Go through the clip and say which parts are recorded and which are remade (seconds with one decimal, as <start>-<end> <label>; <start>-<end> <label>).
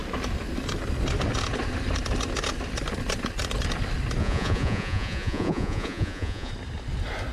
0.0-4.2 recorded; 4.2-6.5 remade; 6.5-7.3 recorded